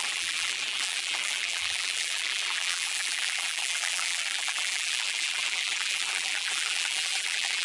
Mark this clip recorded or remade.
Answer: remade